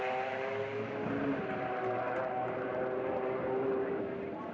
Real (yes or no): yes